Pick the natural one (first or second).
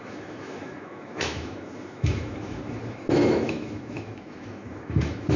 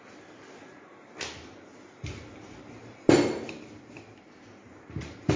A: second